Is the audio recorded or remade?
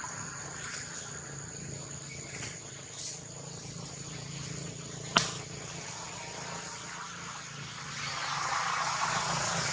recorded